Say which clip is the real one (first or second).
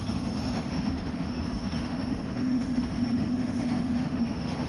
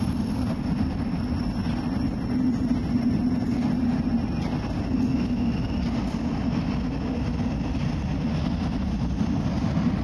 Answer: second